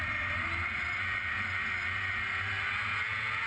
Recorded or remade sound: recorded